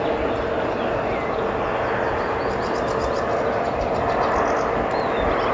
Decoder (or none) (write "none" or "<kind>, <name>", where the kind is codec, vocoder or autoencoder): none